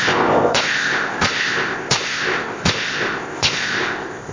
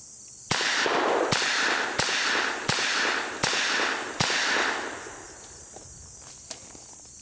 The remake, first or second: first